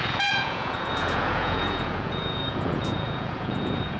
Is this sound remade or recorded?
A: remade